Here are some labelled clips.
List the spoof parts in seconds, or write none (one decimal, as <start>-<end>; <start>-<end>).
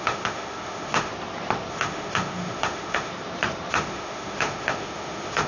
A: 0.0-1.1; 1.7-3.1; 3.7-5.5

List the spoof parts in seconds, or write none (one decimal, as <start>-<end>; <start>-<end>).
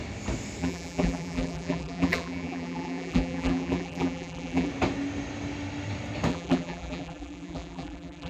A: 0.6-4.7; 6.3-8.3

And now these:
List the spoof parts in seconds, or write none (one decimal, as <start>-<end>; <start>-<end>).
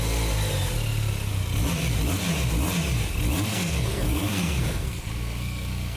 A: 3.5-6.0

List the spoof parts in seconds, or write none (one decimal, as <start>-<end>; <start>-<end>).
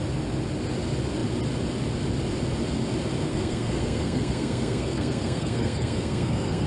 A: 3.3-6.7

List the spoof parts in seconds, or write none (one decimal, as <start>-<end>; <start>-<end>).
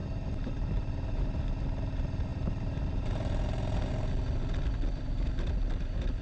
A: 0.0-1.5; 2.3-3.9